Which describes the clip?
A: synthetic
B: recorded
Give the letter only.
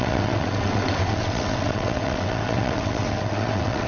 A